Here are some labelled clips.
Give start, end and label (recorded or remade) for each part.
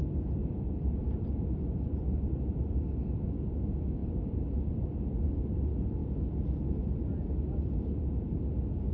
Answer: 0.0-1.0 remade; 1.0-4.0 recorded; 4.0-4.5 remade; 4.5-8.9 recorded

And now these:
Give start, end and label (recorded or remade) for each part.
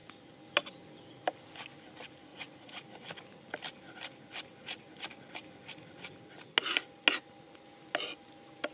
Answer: 0.0-2.3 recorded; 2.3-2.8 remade; 2.8-8.7 recorded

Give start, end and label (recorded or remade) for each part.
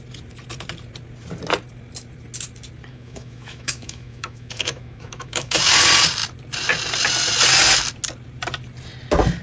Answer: 0.0-2.9 recorded; 2.9-5.6 remade; 5.6-9.4 recorded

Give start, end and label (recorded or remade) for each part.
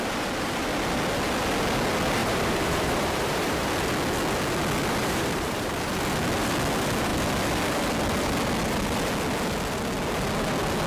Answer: 0.0-2.2 recorded; 2.2-3.7 remade; 3.7-5.0 recorded; 5.0-5.7 remade; 5.7-10.9 recorded